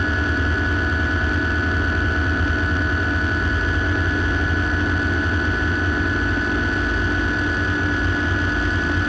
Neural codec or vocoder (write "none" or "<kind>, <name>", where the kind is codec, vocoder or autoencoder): none